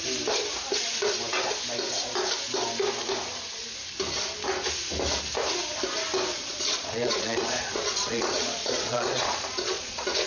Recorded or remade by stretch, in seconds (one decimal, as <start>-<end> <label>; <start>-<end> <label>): 0.0-6.3 recorded; 6.3-10.3 remade